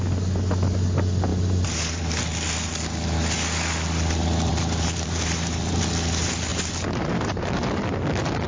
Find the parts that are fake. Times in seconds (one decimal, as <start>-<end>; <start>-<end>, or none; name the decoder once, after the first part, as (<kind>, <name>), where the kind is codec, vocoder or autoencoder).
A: 1.3-2.0 (vocoder, BigVGAN v2); 4.5-5.8; 6.5-7.7